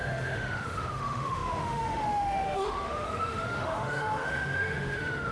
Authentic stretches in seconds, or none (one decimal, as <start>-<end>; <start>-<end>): none